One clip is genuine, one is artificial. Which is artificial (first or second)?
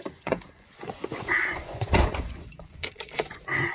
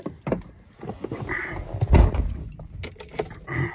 first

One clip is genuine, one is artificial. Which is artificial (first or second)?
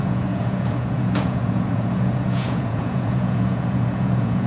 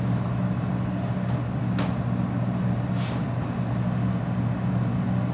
first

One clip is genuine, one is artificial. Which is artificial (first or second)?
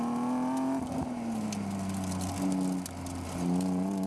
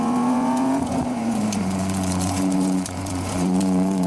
second